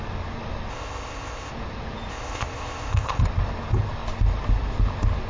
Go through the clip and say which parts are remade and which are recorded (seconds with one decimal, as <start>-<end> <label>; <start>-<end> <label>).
0.0-0.7 recorded; 0.7-1.5 remade; 1.5-2.1 recorded; 2.1-3.2 remade; 3.2-5.3 recorded